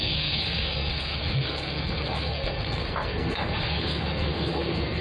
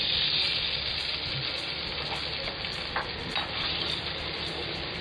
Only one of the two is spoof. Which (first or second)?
first